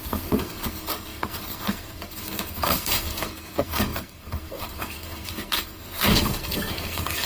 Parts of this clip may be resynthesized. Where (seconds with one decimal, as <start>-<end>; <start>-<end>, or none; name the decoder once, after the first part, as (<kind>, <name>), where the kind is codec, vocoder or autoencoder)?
0.0-7.3 (codec, SNAC)